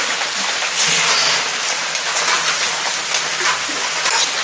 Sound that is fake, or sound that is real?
real